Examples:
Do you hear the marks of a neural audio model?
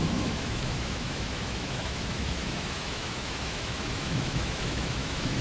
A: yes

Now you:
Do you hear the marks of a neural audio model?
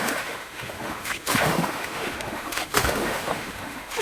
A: yes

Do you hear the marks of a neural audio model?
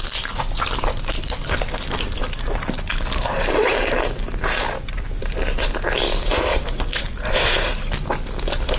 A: no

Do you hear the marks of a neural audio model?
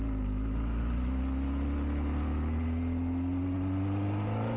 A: no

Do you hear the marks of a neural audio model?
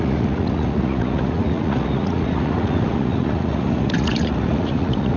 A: yes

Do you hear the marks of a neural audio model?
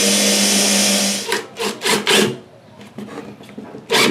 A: no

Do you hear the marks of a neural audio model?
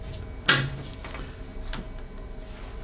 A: no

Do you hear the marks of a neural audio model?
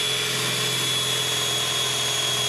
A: no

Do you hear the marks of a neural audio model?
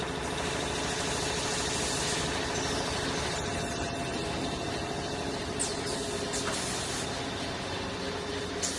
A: no